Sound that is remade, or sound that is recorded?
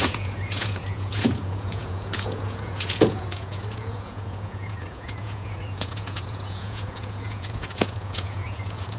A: remade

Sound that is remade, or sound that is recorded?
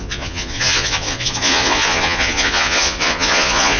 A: remade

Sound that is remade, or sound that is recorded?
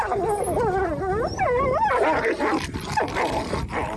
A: recorded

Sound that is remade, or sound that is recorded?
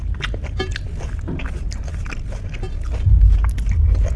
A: recorded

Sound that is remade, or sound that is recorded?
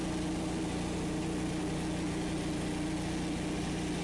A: recorded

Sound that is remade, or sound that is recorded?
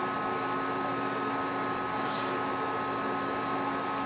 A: recorded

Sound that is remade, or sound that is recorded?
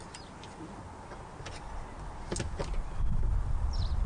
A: recorded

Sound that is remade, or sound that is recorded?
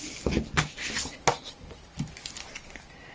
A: recorded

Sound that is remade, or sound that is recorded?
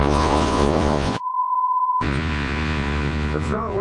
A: remade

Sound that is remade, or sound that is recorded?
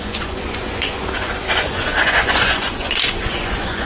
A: remade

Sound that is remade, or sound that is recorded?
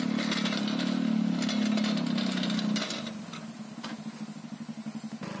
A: recorded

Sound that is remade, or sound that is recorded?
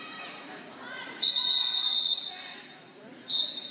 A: remade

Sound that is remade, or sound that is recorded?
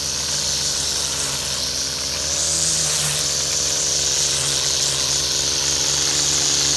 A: recorded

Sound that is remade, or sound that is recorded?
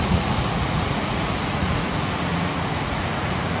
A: remade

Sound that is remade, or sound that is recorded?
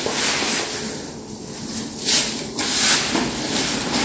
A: recorded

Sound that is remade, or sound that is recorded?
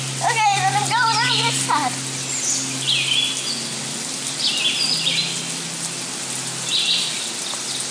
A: recorded